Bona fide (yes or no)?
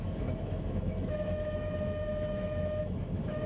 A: no